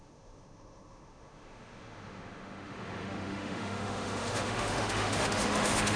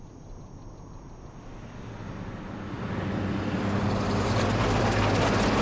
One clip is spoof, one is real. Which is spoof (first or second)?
first